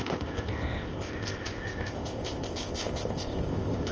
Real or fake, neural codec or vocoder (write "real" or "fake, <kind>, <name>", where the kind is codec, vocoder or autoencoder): fake, codec, ZipCodec